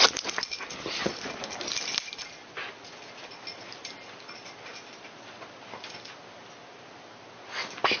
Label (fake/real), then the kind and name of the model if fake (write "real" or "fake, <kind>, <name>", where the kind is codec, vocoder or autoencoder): real